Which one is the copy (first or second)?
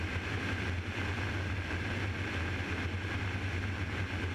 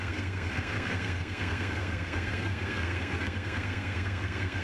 second